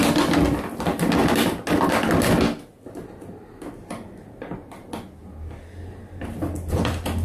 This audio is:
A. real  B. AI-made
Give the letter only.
A